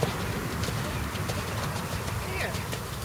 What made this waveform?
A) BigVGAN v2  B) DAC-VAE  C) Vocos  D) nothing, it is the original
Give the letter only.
D